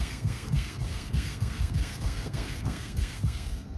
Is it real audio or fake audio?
fake